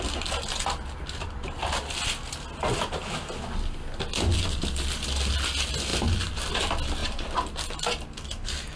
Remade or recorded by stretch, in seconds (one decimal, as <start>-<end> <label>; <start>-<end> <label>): 0.0-8.8 recorded